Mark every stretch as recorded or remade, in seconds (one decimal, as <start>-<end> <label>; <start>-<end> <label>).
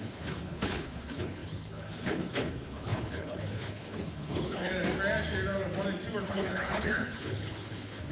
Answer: 0.0-4.7 remade; 4.7-6.2 recorded; 6.2-8.1 remade